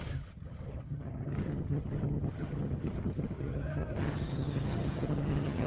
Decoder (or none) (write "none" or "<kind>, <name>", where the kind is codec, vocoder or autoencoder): vocoder, HiFi-GAN